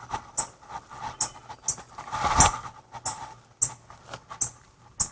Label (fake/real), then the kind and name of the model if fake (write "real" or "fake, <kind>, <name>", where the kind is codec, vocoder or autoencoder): real